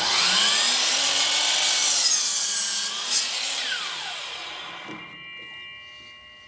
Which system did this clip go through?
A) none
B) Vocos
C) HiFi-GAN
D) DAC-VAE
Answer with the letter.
A